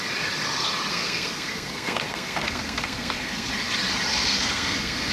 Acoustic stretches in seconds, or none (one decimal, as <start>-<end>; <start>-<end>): 0.0-0.9; 3.5-4.1